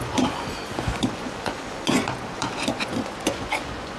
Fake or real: fake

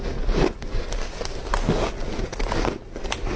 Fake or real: real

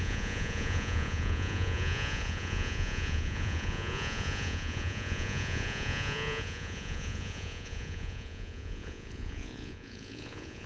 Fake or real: fake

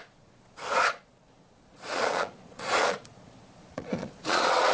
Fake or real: fake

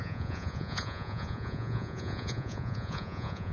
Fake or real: fake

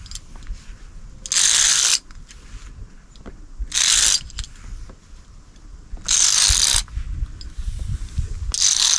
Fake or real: real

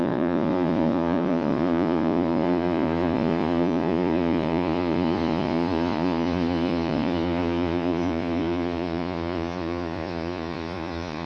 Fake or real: fake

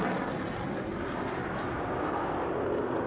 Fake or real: real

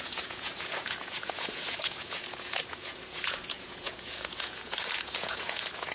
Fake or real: fake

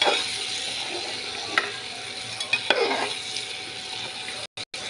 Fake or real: real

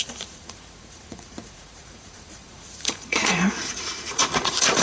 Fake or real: fake